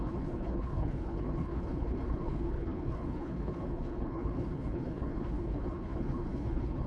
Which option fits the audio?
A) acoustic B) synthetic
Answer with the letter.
B